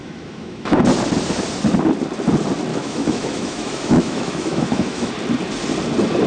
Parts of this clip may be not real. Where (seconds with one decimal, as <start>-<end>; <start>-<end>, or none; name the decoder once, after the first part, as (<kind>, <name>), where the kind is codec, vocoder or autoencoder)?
0.0-0.9 (autoencoder, DAC-VAE); 2.7-5.1